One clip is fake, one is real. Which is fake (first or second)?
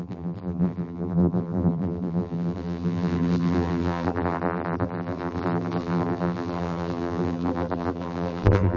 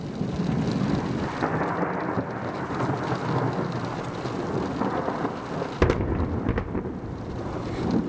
first